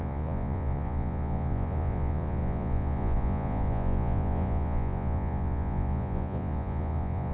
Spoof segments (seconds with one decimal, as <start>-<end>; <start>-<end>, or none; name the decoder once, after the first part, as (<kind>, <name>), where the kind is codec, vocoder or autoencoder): 0.0-7.3 (vocoder, Vocos)